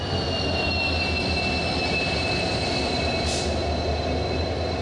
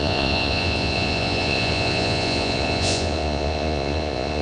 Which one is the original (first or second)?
first